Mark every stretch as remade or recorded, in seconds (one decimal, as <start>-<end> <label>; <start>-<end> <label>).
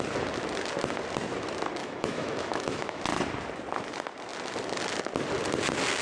0.0-1.8 recorded; 1.8-3.0 remade; 3.0-6.0 recorded